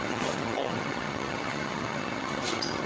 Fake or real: fake